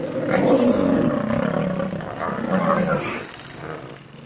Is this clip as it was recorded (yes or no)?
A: yes